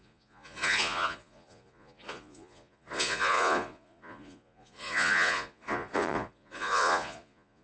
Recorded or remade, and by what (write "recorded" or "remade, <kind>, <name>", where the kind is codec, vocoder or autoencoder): remade, vocoder, Vocos